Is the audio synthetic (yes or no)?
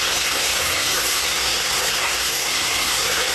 yes